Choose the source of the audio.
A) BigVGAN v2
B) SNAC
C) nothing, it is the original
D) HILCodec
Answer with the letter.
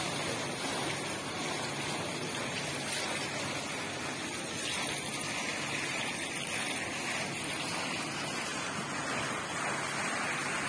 C